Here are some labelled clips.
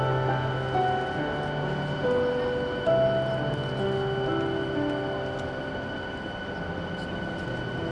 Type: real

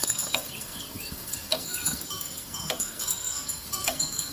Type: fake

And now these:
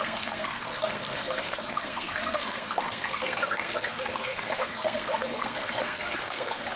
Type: fake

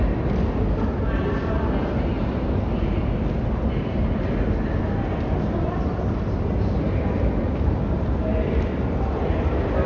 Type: real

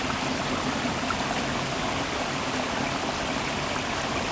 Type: real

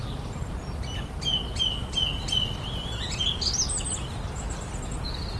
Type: real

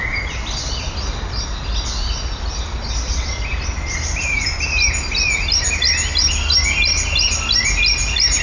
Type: real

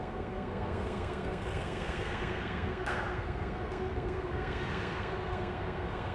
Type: fake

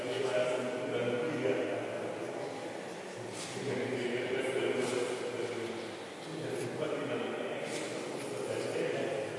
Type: real